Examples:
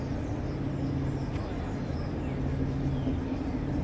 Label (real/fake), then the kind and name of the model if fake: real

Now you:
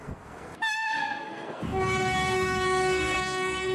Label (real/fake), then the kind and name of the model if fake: fake, codec, SNAC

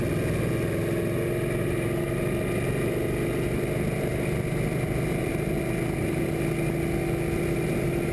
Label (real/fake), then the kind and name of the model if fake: real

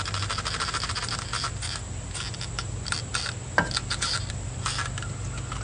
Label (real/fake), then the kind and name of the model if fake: real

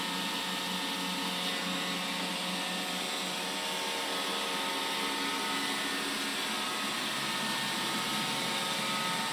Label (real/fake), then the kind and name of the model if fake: real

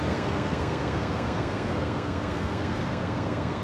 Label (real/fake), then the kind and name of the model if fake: fake, codec, SNAC